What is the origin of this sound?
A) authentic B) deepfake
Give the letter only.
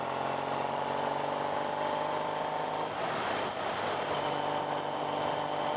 A